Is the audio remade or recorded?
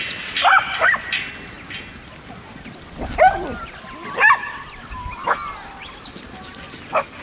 recorded